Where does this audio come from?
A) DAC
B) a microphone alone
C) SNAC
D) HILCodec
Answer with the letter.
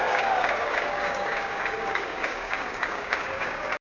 A